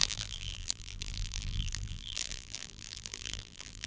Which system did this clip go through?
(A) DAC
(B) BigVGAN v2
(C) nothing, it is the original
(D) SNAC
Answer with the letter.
B